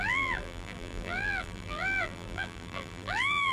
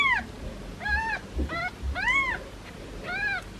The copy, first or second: first